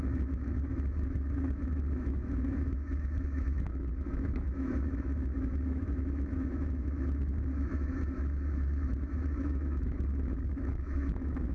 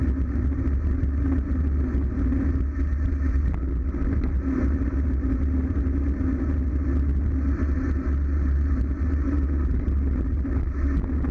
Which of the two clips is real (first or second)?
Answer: second